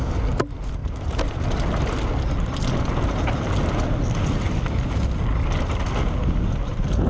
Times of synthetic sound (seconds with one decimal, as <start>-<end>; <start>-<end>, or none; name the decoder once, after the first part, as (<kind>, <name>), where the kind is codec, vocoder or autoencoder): 0.8-1.4 (vocoder, BigVGAN v2)